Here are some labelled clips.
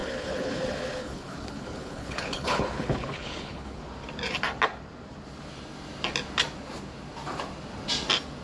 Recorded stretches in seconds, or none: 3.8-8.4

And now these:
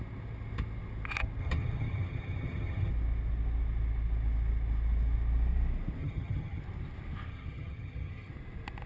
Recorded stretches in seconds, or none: 0.0-1.4; 2.9-6.0; 6.6-7.3; 8.3-8.9

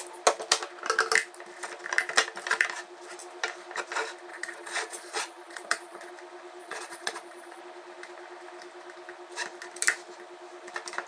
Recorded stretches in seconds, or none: 0.0-4.3; 6.1-6.6; 7.6-11.1

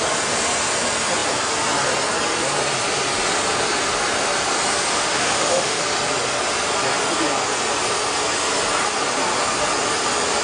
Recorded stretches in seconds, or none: 0.0-4.9; 5.8-10.4

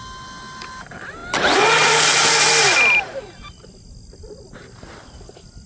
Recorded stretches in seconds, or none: 0.0-5.7

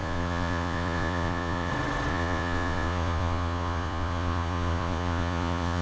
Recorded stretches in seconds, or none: 1.7-2.1